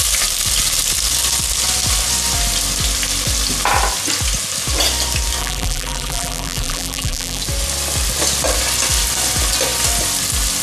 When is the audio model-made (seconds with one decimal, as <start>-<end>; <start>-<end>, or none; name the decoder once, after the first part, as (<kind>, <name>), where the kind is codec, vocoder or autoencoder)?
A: 5.4-7.4 (vocoder, BigVGAN v2)